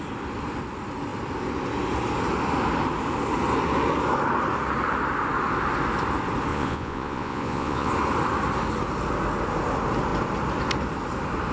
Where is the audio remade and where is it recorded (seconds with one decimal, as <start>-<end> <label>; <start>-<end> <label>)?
0.0-6.5 recorded; 6.5-7.9 remade; 7.9-11.5 recorded